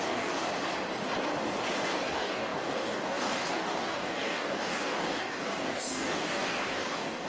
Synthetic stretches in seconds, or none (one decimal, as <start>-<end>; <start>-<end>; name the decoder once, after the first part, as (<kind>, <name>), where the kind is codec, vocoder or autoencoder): 0.0-0.4 (codec, DAC); 2.1-7.3